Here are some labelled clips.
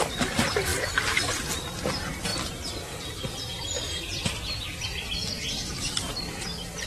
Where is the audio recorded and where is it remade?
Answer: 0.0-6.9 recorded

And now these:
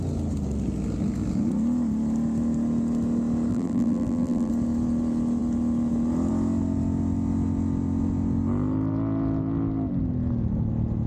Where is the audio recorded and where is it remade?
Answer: 0.0-3.5 recorded; 3.5-4.5 remade; 4.5-11.1 recorded

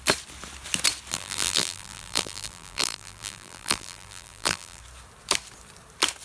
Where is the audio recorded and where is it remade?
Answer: 0.0-1.1 recorded; 1.1-4.8 remade; 4.8-6.2 recorded

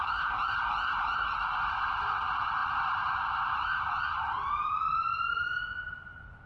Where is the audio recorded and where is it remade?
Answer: 0.0-2.6 recorded; 2.6-5.6 remade; 5.6-6.5 recorded

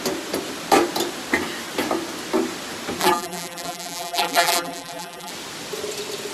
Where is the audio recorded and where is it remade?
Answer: 0.0-3.0 recorded; 3.0-5.3 remade; 5.3-6.3 recorded

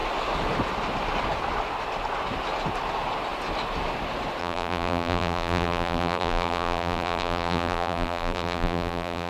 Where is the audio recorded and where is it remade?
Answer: 0.0-4.4 recorded; 4.4-9.3 remade

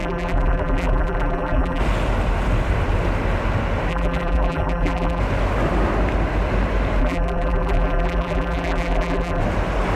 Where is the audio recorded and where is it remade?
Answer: 0.0-1.8 remade; 1.8-3.9 recorded; 3.9-5.2 remade; 5.2-7.0 recorded; 7.0-9.4 remade; 9.4-10.0 recorded

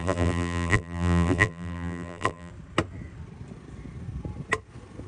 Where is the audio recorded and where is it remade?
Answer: 0.0-2.5 remade; 2.5-5.1 recorded